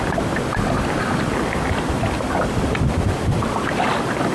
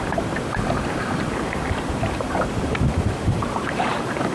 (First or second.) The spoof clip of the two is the second